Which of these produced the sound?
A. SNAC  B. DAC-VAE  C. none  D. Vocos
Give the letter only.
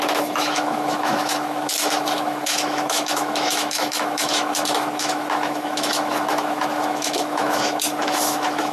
B